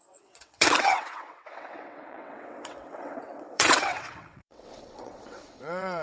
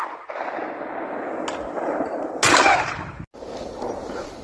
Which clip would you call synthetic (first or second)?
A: first